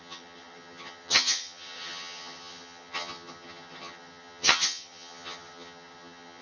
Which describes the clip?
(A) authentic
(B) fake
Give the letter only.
B